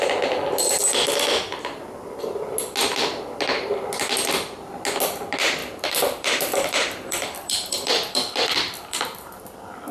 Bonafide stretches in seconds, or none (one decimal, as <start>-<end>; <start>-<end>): 0.0-5.6; 9.0-9.9